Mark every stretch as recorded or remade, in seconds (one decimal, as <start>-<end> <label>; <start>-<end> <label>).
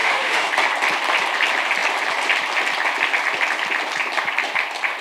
0.0-0.5 remade; 0.5-5.0 recorded